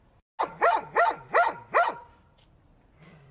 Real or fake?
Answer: real